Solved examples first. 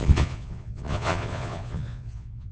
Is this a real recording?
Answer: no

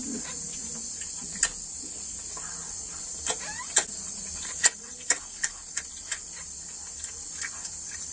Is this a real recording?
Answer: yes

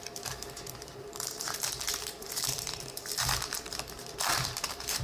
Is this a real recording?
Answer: no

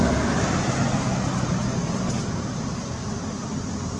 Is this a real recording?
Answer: yes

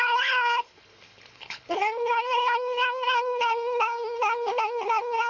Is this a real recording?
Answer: no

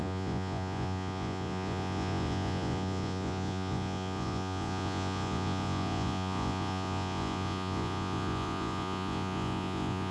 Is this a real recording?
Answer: no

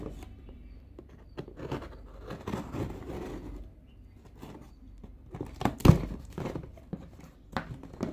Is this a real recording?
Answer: yes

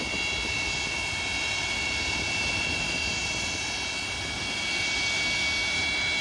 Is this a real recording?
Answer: yes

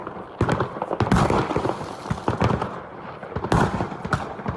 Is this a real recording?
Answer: yes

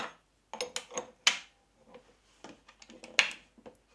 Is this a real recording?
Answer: yes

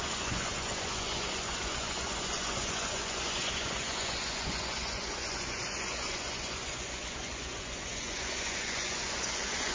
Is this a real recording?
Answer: no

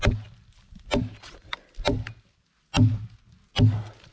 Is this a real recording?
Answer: yes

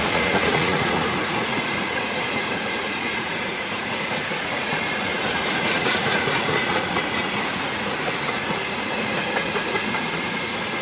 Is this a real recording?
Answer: no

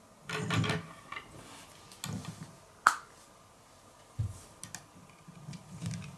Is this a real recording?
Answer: yes